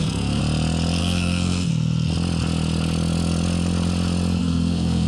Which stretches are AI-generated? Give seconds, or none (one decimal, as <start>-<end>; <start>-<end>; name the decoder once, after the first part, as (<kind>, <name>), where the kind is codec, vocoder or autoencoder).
0.0-0.4 (codec, SNAC); 1.0-1.7; 4.4-5.1

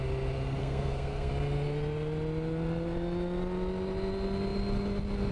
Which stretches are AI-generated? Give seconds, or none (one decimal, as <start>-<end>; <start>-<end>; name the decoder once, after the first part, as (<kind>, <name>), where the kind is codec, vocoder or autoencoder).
0.6-1.3 (codec, SNAC)

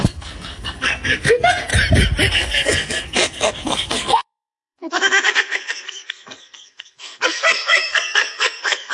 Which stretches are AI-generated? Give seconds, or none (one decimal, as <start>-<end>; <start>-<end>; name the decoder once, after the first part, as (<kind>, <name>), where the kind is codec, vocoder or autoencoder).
0.0-1.7 (codec, SNAC); 2.3-8.9